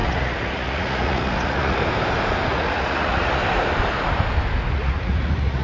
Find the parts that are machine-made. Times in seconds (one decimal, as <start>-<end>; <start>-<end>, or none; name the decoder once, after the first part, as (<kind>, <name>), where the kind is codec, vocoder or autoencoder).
0.0-1.8 (vocoder, Vocos); 2.5-3.4; 4.7-5.6

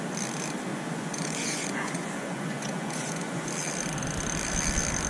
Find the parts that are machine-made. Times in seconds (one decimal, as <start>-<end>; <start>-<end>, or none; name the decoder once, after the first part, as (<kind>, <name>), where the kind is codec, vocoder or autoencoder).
0.7-3.5 (vocoder, Vocos)

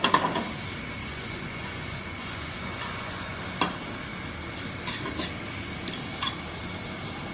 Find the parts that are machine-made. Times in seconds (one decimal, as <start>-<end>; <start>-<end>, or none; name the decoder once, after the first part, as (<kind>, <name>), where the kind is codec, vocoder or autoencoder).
1.0-3.4 (vocoder, Vocos)

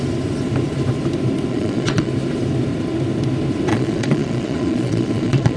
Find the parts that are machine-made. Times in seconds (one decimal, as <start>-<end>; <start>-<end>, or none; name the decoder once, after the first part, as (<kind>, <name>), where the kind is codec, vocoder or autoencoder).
1.5-2.1 (vocoder, Vocos); 3.7-5.6

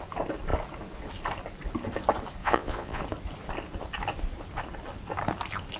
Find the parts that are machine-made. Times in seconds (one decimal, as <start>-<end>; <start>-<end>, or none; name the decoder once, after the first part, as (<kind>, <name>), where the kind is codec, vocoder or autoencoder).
2.4-3.0 (vocoder, Vocos)

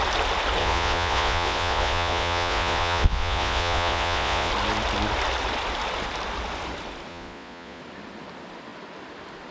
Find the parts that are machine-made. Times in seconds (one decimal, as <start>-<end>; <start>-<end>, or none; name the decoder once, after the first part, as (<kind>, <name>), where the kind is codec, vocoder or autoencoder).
0.6-4.5 (vocoder, Vocos); 7.1-7.8

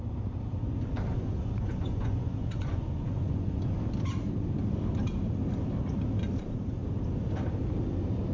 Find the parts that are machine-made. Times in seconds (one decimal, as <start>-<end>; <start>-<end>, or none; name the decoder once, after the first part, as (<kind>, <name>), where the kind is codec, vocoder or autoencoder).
1.1-3.8 (vocoder, Vocos)

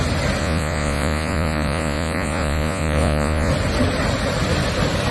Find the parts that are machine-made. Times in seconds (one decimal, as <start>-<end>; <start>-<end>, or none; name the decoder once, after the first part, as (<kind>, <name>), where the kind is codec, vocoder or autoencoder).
0.4-3.5 (vocoder, Vocos)